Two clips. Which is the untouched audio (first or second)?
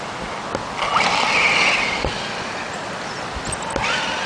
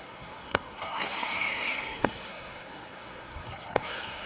first